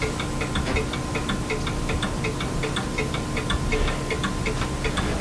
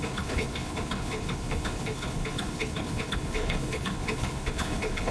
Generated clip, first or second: second